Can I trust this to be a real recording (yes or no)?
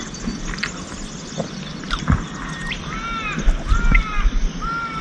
yes